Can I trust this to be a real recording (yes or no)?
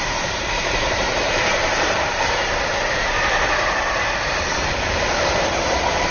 no